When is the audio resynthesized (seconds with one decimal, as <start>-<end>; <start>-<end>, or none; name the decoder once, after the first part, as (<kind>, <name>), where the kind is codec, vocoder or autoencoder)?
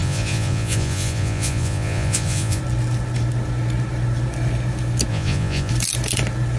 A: 0.0-2.6 (vocoder, Vocos); 5.1-5.7